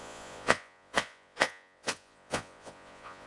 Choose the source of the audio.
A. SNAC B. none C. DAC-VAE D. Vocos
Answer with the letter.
D